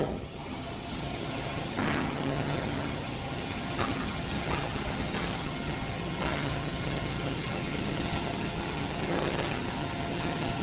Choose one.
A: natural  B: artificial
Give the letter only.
B